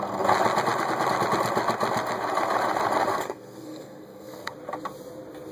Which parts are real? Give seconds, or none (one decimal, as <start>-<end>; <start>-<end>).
0.0-3.1; 4.5-5.5